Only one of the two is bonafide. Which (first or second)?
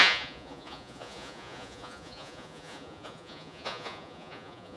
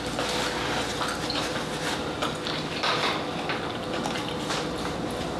second